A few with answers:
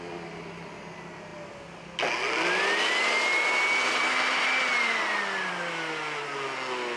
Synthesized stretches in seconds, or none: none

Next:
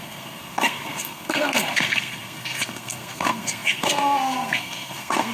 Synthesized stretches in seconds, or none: 0.0-5.3

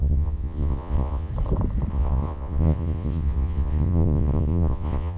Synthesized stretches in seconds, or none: 0.0-1.3; 1.9-5.2

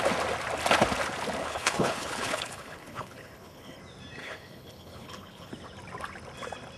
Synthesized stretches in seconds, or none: 1.4-3.8; 4.2-5.5

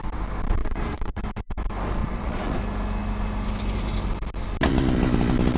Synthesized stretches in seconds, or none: 0.6-1.2; 2.0-2.6

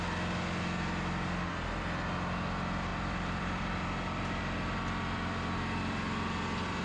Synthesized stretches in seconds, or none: 2.9-4.4